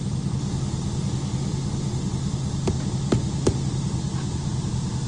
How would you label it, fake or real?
real